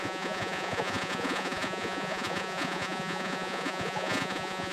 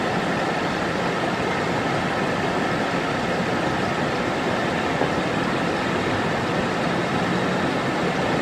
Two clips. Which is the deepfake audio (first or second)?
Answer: first